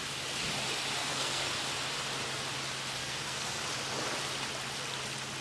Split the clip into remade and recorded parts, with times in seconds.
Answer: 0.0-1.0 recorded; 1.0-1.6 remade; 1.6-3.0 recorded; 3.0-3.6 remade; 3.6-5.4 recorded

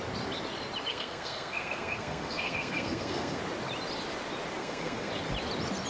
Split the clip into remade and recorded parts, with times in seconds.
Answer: 0.0-0.9 recorded; 0.9-3.4 remade; 3.4-4.6 recorded; 4.6-5.1 remade; 5.1-5.9 recorded